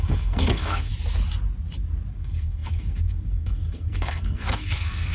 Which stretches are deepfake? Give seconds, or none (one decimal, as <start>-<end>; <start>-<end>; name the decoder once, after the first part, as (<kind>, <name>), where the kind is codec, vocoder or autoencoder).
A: 0.0-0.9 (codec, SNAC); 2.1-5.1